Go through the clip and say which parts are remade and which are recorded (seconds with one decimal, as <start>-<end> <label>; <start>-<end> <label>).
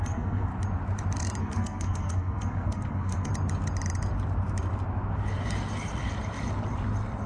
0.0-0.5 remade; 0.5-1.4 recorded; 1.4-3.3 remade; 3.3-7.3 recorded